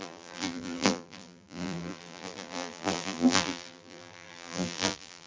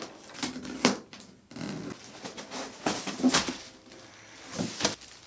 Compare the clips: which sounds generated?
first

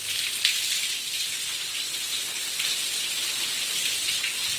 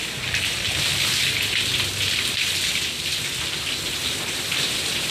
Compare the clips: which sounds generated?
first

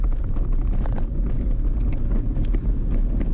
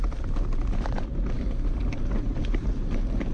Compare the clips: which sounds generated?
second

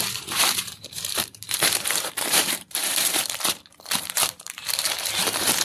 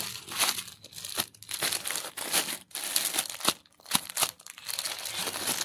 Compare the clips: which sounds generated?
first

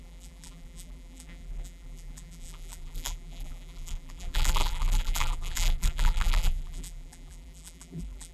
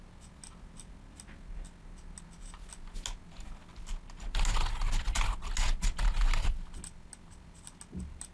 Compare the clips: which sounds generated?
first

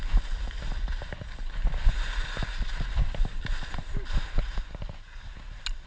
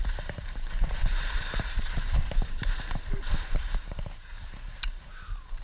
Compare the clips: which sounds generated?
second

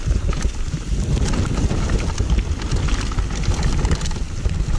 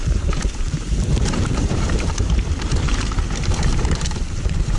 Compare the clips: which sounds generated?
second